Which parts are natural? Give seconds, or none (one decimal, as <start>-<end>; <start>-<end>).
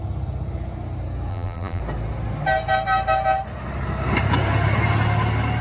0.0-1.3; 1.8-5.6